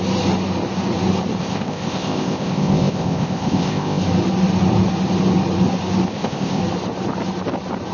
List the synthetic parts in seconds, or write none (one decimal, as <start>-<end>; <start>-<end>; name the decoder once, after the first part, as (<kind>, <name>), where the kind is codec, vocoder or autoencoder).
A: 1.4-4.0 (codec, ZipCodec); 6.1-6.6